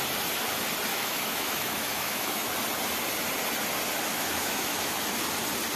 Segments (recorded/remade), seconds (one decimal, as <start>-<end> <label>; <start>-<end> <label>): 0.0-0.9 recorded; 0.9-2.5 remade; 2.5-4.1 recorded; 4.1-4.9 remade; 4.9-5.8 recorded